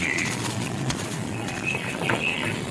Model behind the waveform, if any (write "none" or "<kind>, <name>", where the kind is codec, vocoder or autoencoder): vocoder, Vocos